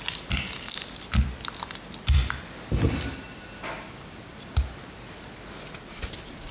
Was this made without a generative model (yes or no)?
yes